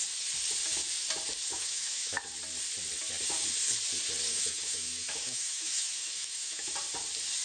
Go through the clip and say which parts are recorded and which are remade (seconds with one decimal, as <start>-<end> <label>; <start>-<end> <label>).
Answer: 0.0-1.5 recorded; 1.5-2.2 remade; 2.2-4.3 recorded; 4.3-6.7 remade; 6.7-7.4 recorded